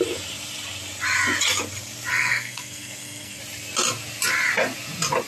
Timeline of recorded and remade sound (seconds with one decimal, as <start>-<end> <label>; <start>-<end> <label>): 0.0-2.1 recorded; 2.1-3.4 remade; 3.4-5.3 recorded